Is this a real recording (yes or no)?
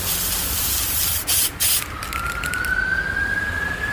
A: no